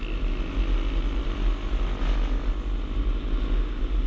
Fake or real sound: real